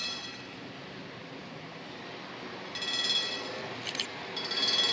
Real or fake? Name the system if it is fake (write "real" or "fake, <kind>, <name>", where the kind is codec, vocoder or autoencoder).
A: real